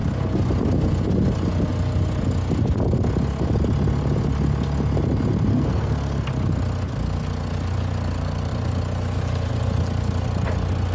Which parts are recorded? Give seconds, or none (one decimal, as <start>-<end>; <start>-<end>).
0.0-5.5; 6.3-10.9